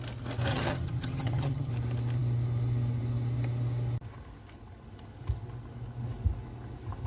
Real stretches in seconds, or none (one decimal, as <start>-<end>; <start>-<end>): 0.0-0.5; 1.7-7.1